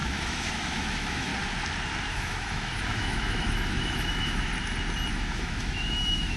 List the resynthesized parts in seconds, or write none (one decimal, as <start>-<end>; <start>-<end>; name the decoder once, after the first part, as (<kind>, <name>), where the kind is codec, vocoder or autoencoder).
0.0-1.3 (autoencoder, DAC-VAE); 2.1-4.5; 5.1-6.4